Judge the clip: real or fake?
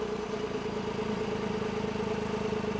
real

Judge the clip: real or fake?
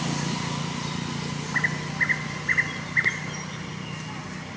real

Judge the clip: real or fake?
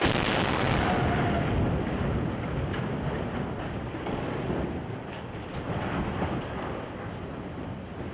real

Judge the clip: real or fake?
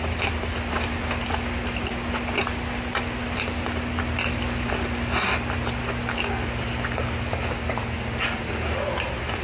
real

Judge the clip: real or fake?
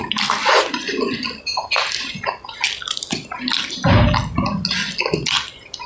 real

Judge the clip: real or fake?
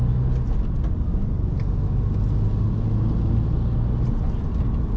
real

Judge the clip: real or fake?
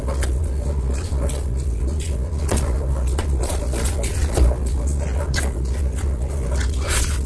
fake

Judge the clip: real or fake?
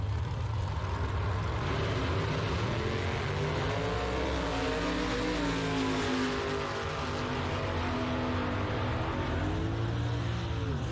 real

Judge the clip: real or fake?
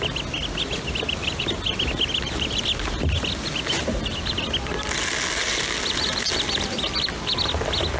real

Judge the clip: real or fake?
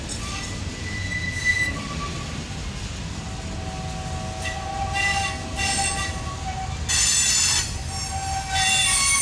real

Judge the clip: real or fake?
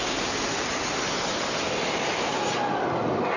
real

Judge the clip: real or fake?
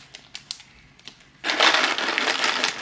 real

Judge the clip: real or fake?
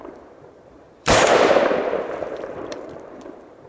fake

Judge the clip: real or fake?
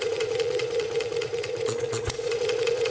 fake